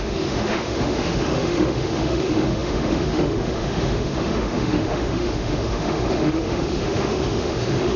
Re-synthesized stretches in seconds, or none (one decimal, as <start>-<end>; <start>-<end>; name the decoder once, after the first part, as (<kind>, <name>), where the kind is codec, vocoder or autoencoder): 0.0-8.0 (autoencoder, DAC-VAE)